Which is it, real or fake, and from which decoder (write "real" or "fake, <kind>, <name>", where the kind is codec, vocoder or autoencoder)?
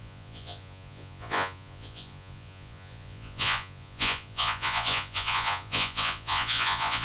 fake, vocoder, Vocos